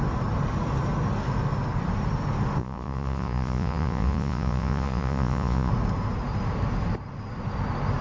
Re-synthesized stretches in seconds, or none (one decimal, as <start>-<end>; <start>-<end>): 2.6-5.7